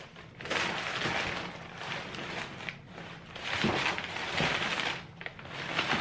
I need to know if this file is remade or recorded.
recorded